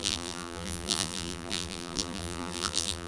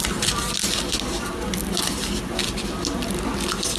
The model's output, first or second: first